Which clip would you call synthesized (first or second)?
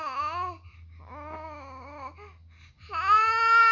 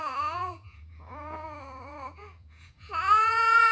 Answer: second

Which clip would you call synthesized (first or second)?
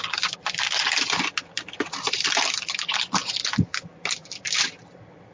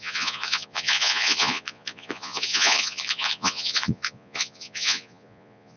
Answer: second